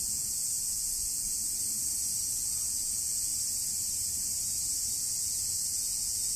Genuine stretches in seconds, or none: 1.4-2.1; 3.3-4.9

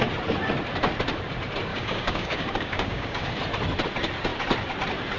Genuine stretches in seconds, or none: 0.0-1.7; 3.3-5.2

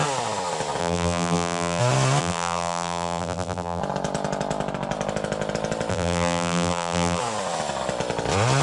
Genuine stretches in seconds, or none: 0.0-0.8; 1.8-2.2; 3.8-5.9; 7.2-8.6

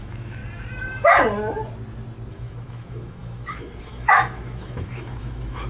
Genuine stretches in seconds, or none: 0.4-2.3